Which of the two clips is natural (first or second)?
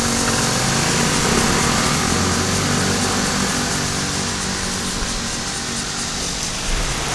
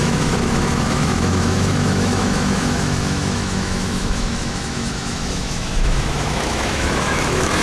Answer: first